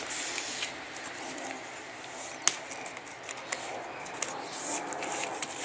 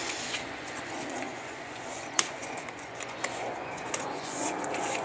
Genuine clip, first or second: first